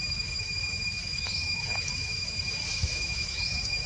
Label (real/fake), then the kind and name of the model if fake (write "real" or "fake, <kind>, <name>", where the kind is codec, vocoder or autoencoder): fake, autoencoder, DAC-VAE